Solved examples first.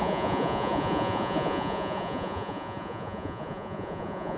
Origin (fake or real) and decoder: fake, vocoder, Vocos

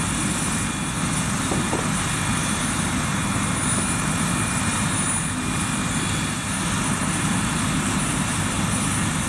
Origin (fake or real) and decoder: real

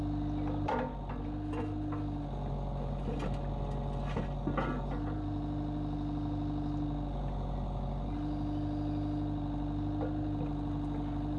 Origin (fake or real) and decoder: real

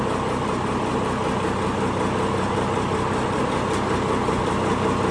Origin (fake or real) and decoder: real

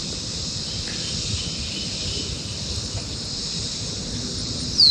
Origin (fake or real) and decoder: real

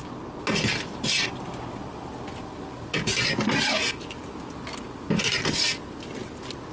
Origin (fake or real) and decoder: real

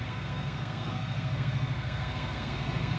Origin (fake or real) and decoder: fake, codec, SNAC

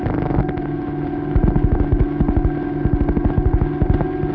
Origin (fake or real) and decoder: real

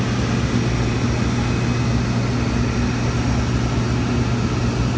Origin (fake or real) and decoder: real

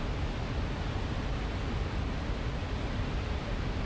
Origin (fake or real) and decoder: real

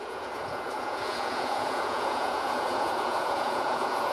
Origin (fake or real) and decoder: fake, vocoder, Vocos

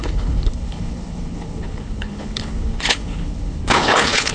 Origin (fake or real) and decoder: fake, codec, HILCodec